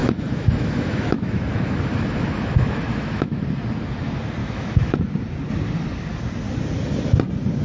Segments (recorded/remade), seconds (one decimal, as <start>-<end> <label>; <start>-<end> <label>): 0.0-3.4 remade; 3.4-4.4 recorded; 4.4-5.0 remade; 5.0-7.6 recorded